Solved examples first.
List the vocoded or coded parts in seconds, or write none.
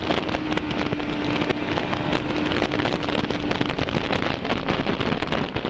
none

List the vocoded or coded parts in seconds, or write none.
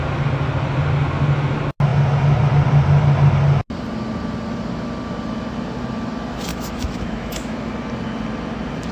6.5-7.7 (autoencoder, DAC-VAE)